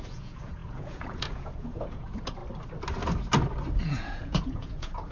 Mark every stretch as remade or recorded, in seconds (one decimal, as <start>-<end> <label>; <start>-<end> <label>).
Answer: 0.0-2.4 remade; 2.4-3.8 recorded; 3.8-5.1 remade

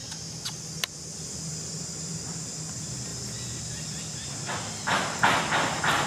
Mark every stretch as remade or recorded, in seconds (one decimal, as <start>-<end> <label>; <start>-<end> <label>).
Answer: 0.0-6.1 recorded

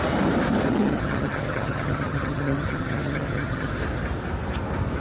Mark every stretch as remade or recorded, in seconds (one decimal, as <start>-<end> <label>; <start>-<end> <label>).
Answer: 0.0-0.7 recorded; 0.7-3.7 remade; 3.7-5.0 recorded

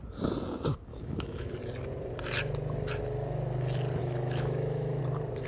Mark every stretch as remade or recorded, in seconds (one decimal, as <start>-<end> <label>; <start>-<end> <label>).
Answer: 0.0-0.9 recorded; 0.9-1.5 remade; 1.5-4.0 recorded; 4.0-5.0 remade; 5.0-5.5 recorded